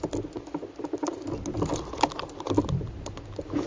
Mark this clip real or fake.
real